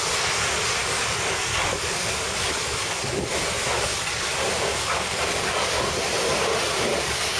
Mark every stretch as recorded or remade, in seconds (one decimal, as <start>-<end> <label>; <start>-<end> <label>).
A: 0.0-0.8 recorded; 0.8-3.3 remade; 3.3-3.9 recorded; 3.9-5.9 remade; 5.9-6.9 recorded; 6.9-7.4 remade